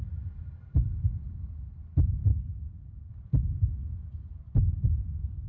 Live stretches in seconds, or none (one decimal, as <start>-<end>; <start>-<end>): none